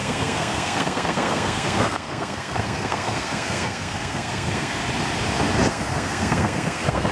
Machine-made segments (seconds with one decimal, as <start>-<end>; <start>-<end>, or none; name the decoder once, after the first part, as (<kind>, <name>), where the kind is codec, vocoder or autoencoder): 0.0-4.8 (codec, SNAC); 5.7-7.1

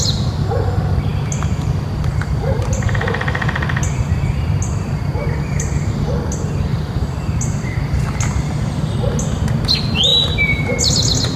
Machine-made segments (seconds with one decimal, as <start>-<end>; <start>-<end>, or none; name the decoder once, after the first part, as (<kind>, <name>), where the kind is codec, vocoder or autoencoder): 6.7-8.0 (vocoder, BigVGAN v2)

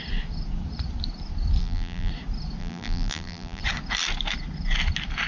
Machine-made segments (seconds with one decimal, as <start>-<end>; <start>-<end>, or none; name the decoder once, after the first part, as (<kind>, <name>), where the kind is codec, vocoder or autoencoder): 1.6-2.1 (vocoder, BigVGAN v2); 2.6-3.6